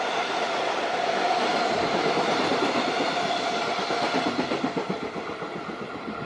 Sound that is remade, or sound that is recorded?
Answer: recorded